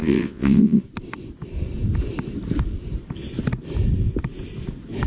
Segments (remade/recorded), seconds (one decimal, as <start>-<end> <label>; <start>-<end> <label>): 0.0-0.8 remade; 0.8-5.1 recorded